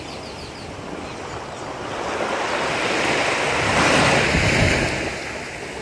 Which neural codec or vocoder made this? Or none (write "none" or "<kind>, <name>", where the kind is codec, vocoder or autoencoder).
none